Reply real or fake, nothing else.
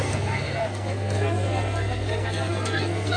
fake